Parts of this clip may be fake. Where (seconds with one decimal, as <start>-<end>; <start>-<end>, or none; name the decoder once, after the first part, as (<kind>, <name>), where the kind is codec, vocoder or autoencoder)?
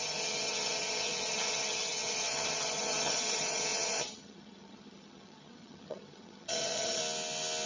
0.0-7.0 (vocoder, HiFi-GAN)